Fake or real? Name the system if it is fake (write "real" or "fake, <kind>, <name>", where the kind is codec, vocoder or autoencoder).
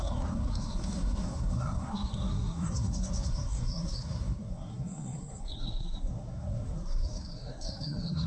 fake, codec, SNAC